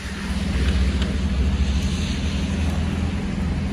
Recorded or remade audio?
recorded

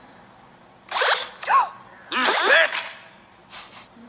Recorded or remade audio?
recorded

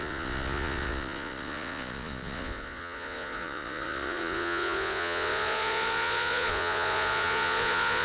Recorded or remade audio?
remade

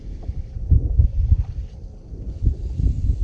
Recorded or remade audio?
recorded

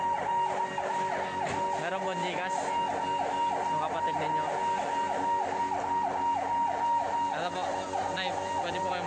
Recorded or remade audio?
recorded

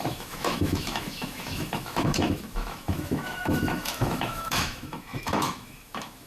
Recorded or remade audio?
remade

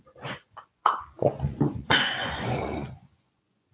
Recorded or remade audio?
remade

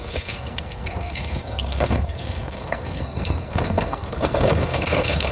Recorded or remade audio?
remade